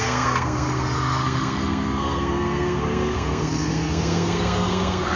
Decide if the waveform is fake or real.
fake